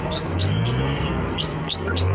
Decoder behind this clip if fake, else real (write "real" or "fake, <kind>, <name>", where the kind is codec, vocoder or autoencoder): fake, codec, SNAC